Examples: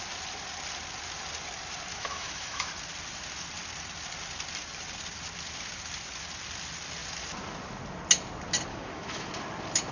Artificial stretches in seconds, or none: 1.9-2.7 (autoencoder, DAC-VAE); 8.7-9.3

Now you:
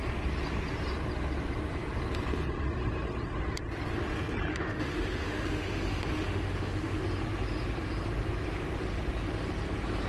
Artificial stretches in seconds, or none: 4.5-7.0 (autoencoder, DAC-VAE)

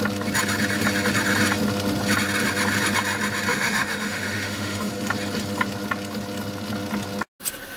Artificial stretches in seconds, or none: 3.5-4.9 (autoencoder, DAC-VAE)

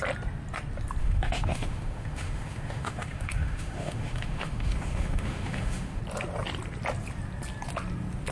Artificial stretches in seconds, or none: 1.0-6.0 (autoencoder, DAC-VAE)

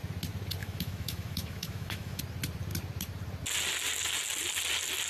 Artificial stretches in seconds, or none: 0.6-2.2 (autoencoder, DAC-VAE)

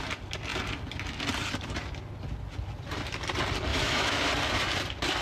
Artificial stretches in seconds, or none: 3.7-4.3 (autoencoder, DAC-VAE)

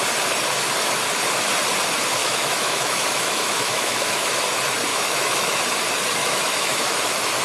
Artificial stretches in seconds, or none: 2.2-4.3 (autoencoder, DAC-VAE); 4.9-5.6; 6.2-7.0

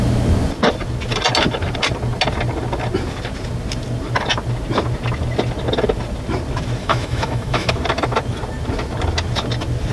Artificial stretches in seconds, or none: 6.8-7.7 (autoencoder, DAC-VAE)